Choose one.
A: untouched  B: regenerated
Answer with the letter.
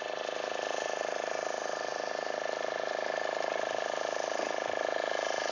A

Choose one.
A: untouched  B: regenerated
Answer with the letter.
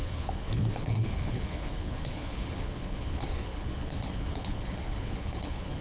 B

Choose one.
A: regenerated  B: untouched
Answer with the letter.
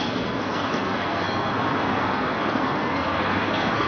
A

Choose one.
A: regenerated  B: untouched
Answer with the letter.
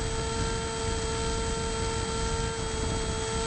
B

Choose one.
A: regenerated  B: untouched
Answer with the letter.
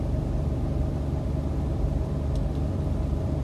B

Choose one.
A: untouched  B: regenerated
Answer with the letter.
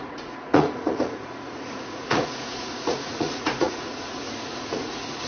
B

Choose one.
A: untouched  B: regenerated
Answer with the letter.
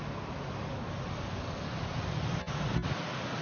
A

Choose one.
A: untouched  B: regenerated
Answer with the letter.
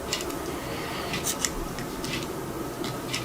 A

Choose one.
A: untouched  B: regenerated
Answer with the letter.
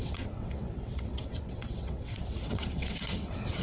B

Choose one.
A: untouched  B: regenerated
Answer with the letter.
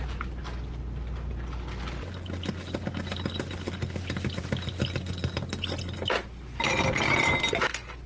A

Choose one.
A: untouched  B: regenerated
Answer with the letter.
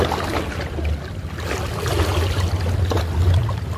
A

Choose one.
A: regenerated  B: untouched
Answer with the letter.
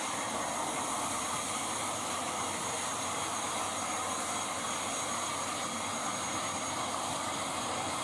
B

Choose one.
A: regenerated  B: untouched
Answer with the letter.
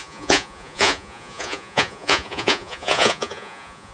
A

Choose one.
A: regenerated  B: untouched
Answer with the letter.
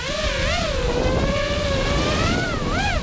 A